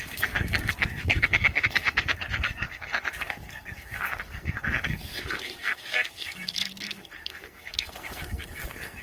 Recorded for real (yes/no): no